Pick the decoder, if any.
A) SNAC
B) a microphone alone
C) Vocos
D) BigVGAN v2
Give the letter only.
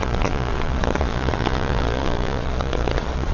C